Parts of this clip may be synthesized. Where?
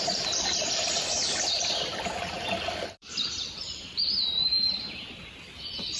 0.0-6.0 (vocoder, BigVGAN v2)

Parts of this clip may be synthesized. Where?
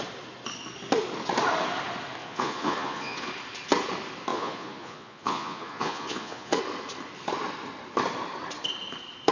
2.2-3.3 (vocoder, Vocos); 4.3-6.6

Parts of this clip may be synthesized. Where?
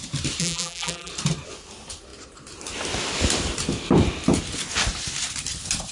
0.4-1.1 (vocoder, BigVGAN v2)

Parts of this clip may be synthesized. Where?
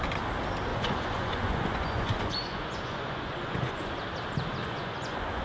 0.7-3.9 (vocoder, Vocos); 4.6-5.4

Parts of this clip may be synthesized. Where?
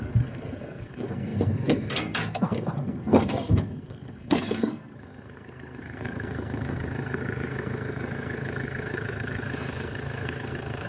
0.0-10.9 (codec, SNAC)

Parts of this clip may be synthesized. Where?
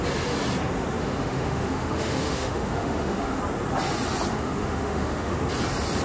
1.0-3.4 (autoencoder, DAC-VAE); 4.3-5.4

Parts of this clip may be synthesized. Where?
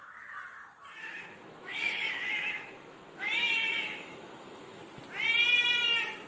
1.0-4.8 (autoencoder, DAC-VAE)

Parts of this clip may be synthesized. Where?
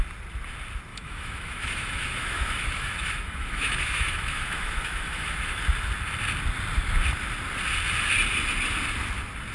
0.9-5.6 (autoencoder, DAC-VAE)